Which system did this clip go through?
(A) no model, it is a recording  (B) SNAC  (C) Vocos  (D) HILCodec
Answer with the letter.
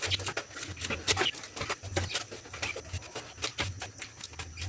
A